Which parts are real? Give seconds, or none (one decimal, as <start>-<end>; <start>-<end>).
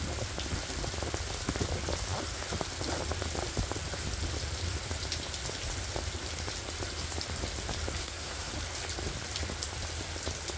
0.0-8.0; 8.5-10.6